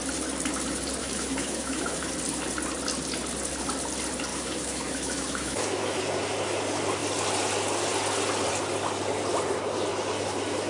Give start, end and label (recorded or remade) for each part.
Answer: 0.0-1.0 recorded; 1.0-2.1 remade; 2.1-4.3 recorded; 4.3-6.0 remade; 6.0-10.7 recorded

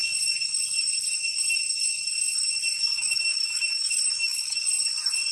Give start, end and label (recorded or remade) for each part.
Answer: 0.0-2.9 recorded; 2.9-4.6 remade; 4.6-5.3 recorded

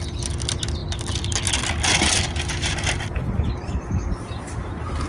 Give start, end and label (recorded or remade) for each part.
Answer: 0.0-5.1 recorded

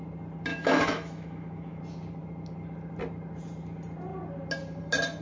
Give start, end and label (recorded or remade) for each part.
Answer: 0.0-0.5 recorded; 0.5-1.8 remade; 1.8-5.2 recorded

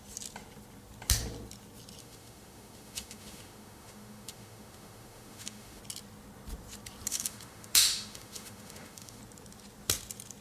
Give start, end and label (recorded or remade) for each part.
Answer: 0.0-2.0 recorded; 2.0-5.8 remade; 5.8-7.1 recorded; 7.1-9.2 remade; 9.2-10.4 recorded